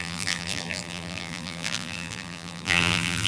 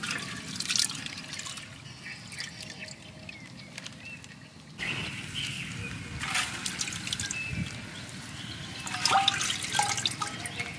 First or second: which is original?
second